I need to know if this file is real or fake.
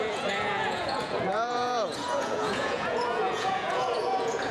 fake